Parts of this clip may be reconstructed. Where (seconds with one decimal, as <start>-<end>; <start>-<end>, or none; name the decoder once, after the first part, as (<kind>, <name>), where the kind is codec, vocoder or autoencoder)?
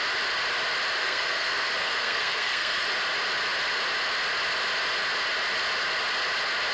1.0-2.9 (codec, SNAC)